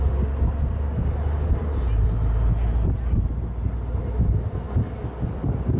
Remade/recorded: recorded